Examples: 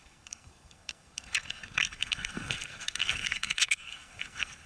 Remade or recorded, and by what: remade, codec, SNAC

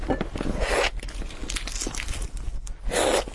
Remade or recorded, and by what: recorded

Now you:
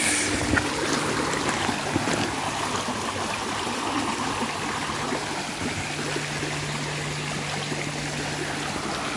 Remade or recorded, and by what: recorded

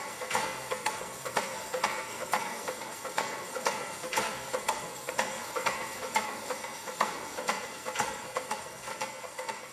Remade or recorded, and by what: remade, codec, SNAC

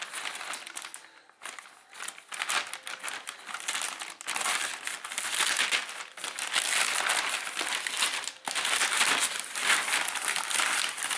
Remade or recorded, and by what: recorded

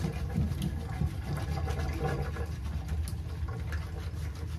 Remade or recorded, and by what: recorded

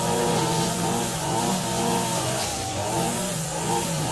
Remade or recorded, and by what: remade, vocoder, Vocos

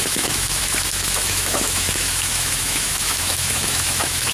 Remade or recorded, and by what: remade, autoencoder, DAC-VAE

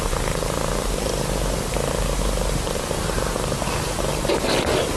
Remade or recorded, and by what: recorded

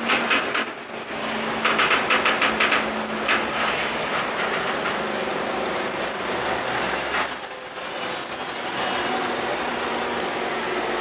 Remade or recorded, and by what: recorded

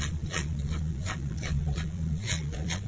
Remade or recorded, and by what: remade, vocoder, Vocos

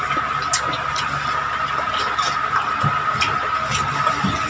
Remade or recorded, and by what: recorded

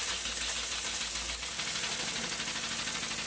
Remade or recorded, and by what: recorded